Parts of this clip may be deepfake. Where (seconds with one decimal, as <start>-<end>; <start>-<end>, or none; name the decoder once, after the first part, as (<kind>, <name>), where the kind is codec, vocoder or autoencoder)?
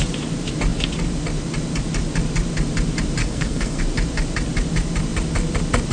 3.2-3.8 (codec, SNAC)